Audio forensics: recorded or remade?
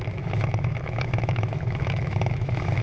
remade